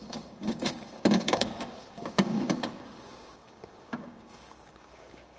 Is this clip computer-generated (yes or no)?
yes